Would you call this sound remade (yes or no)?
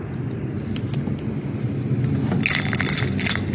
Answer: no